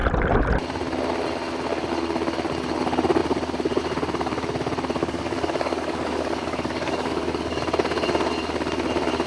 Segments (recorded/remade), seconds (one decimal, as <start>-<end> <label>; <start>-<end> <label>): 0.0-5.0 recorded; 5.0-7.6 remade; 7.6-9.3 recorded